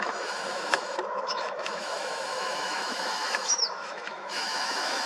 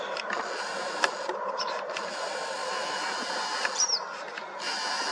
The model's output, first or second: first